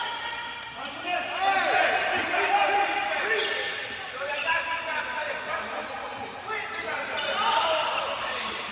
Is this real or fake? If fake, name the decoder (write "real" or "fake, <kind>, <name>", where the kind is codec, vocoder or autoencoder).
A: real